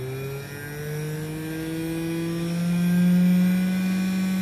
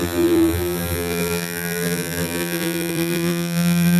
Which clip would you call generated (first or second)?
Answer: second